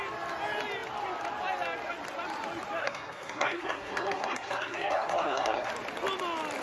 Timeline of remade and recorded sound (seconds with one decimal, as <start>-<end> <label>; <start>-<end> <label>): 0.0-2.8 recorded; 2.8-5.7 remade; 5.7-6.6 recorded